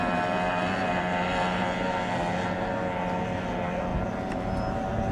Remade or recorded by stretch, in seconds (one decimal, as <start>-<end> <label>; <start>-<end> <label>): 0.0-5.1 recorded